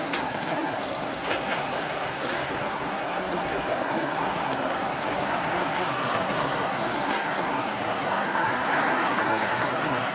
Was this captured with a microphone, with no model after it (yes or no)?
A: no